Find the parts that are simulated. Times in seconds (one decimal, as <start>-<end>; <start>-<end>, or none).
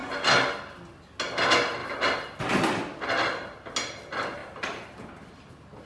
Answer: 1.8-2.4; 4.4-5.5